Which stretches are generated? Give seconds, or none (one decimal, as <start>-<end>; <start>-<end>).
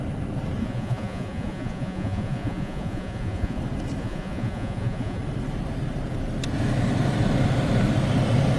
0.6-3.6; 4.0-5.2